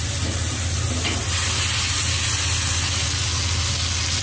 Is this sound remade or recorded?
recorded